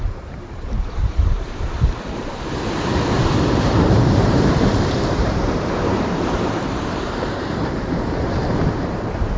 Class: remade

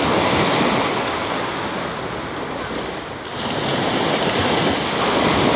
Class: recorded